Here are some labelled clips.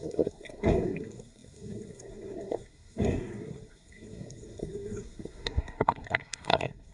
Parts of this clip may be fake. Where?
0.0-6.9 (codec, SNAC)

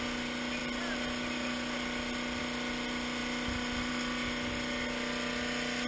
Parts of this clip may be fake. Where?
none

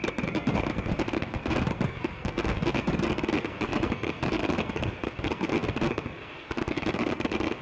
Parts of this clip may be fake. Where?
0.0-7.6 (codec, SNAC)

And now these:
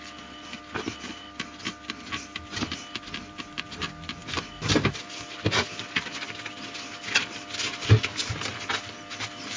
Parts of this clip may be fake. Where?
none